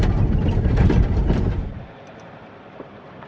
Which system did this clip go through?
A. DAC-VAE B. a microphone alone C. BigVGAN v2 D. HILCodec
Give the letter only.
C